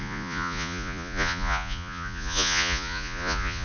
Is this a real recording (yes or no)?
no